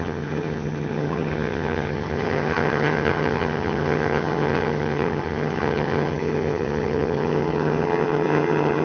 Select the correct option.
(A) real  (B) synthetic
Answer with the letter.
B